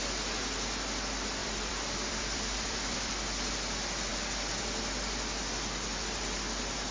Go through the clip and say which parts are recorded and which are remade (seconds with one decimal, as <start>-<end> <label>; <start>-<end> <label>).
0.0-1.4 recorded; 1.4-3.2 remade; 3.2-6.9 recorded